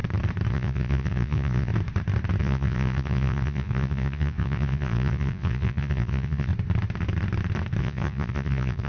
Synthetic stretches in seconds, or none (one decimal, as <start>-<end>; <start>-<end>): 0.5-1.7; 2.4-6.5; 7.8-8.9